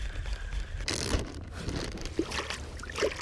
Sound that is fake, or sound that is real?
real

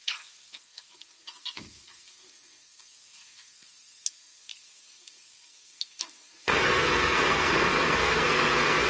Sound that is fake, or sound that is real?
fake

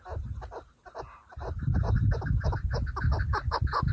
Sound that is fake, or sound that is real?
real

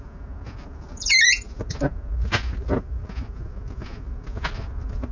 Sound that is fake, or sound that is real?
real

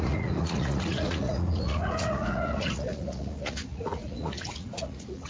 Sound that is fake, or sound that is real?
fake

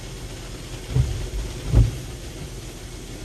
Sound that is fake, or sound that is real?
real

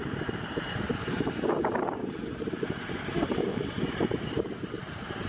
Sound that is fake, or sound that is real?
fake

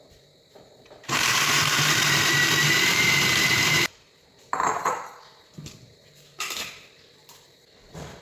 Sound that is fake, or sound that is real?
fake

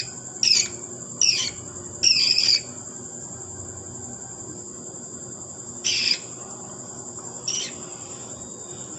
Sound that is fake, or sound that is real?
real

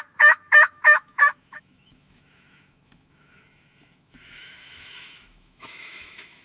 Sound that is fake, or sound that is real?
fake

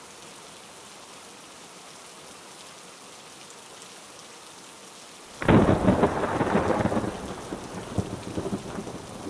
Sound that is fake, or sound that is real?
real